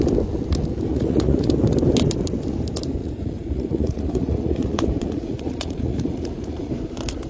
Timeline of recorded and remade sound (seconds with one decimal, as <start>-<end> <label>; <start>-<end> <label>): 0.0-0.9 recorded; 0.9-1.5 remade; 1.5-3.0 recorded; 3.0-6.7 remade; 6.7-7.3 recorded

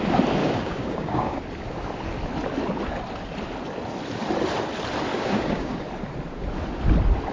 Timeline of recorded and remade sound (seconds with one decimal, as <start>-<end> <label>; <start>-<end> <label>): 0.0-0.4 recorded; 0.4-1.4 remade; 1.4-5.1 recorded; 5.1-5.8 remade; 5.8-7.3 recorded

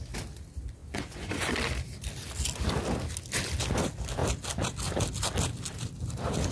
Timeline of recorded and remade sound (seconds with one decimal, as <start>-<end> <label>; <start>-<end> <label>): 0.0-0.8 recorded; 0.8-1.5 remade; 1.5-6.5 recorded

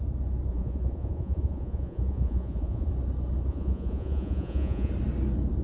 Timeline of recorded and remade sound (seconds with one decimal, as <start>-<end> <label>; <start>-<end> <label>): 0.0-0.5 recorded; 0.5-2.9 remade; 2.9-3.5 recorded; 3.5-4.9 remade; 4.9-5.6 recorded

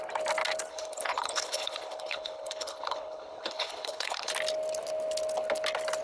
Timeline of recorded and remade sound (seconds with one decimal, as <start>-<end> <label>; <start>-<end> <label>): 0.0-0.7 recorded; 0.7-4.3 remade; 4.3-6.0 recorded

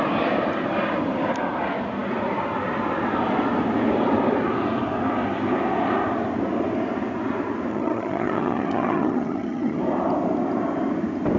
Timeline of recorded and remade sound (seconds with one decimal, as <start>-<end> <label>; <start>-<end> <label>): 0.0-7.7 recorded; 7.7-9.8 remade; 9.8-11.4 recorded

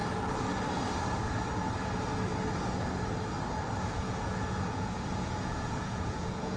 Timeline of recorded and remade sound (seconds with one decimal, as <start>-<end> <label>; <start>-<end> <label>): 0.0-3.8 recorded; 3.8-6.6 remade

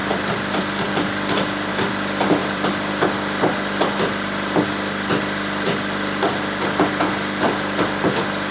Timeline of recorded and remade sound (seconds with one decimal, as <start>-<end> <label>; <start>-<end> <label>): 0.0-2.4 recorded; 2.4-2.9 remade; 2.9-8.5 recorded